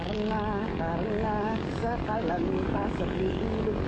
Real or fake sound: fake